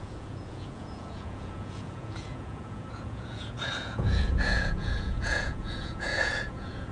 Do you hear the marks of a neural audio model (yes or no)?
yes